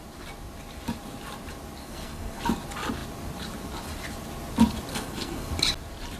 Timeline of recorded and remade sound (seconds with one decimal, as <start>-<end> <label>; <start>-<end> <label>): 0.0-1.8 recorded; 1.8-2.4 remade; 2.4-4.9 recorded; 4.9-5.5 remade; 5.5-6.2 recorded